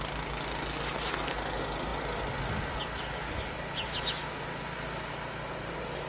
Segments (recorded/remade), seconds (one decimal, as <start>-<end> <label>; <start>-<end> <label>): 0.0-6.1 recorded